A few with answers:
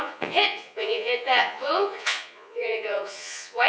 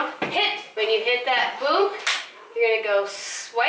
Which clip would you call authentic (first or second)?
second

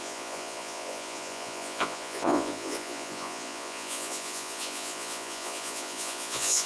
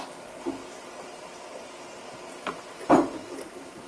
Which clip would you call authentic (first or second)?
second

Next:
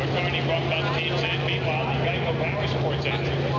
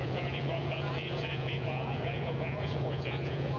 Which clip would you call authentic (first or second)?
first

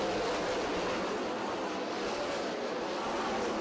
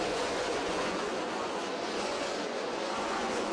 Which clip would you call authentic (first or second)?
first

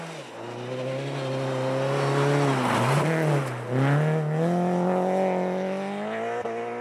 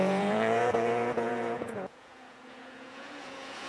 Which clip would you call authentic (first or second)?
first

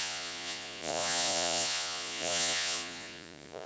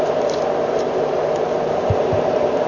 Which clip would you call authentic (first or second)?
second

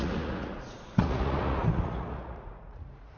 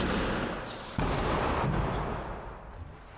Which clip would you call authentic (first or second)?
second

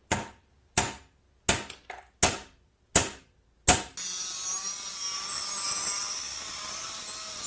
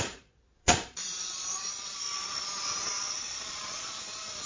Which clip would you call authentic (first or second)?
first